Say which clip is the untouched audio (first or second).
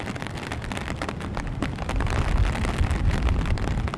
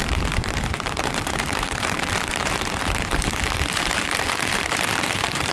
first